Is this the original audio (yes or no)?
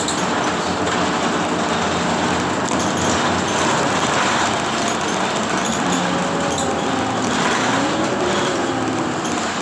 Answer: yes